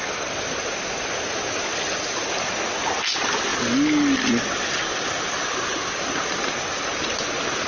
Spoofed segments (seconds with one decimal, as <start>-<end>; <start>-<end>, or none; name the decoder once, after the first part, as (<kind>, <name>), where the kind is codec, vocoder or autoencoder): none